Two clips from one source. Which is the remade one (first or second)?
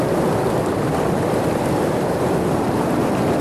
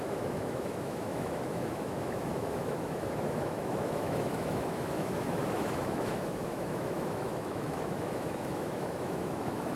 second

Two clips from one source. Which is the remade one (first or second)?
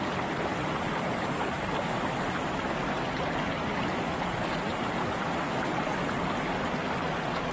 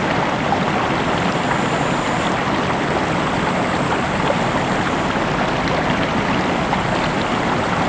first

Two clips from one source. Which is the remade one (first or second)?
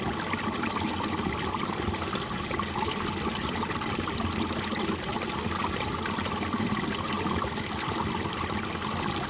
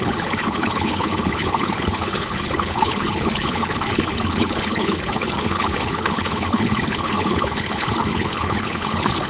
second